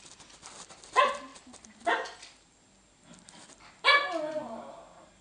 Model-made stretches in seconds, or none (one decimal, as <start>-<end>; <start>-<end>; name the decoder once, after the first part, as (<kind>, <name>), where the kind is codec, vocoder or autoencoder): none